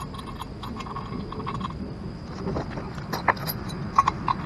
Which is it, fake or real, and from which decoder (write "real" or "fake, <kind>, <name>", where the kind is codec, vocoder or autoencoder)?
real